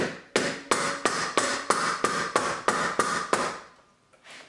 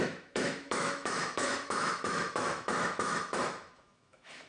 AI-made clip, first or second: second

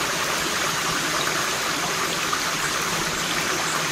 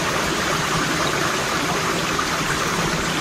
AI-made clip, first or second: second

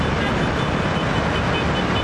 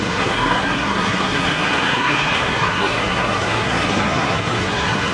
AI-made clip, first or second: second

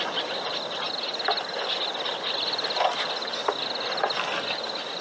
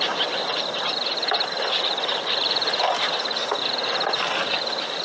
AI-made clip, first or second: second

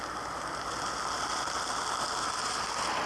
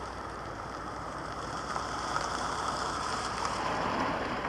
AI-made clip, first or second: second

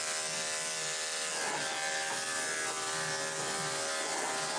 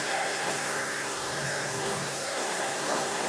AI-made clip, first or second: second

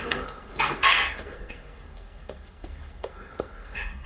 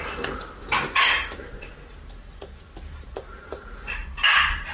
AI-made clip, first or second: first